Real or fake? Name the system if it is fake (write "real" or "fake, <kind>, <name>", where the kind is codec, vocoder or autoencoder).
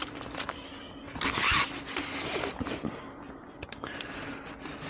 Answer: real